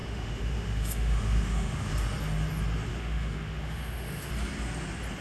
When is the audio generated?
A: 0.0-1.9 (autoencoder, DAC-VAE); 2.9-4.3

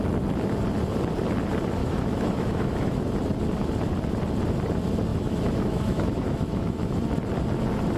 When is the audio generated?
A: 1.8-3.0 (autoencoder, DAC-VAE); 5.1-7.0

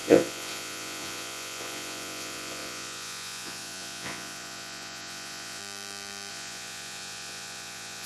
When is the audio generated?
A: 0.0-5.6 (vocoder, Vocos); 6.3-8.1

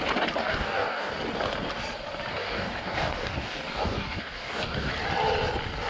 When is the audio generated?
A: 0.4-1.1 (codec, DAC); 2.3-4.9

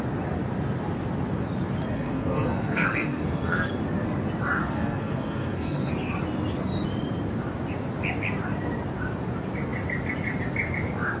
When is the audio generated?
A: 1.9-3.7 (codec, SNAC); 4.6-5.9